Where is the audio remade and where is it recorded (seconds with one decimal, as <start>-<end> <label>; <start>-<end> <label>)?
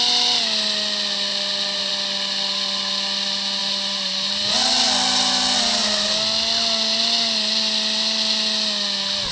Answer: 0.0-1.3 recorded; 1.3-1.9 remade; 1.9-3.6 recorded; 3.6-4.5 remade; 4.5-9.3 recorded